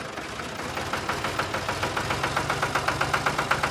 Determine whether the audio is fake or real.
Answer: real